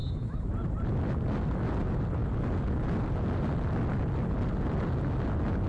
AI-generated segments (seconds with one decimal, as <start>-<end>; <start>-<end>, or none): 0.0-0.5